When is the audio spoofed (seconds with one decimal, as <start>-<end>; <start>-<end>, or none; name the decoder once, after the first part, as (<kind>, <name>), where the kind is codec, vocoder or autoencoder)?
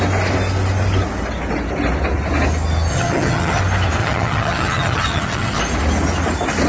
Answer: 2.9-3.6 (vocoder, HiFi-GAN); 4.0-5.6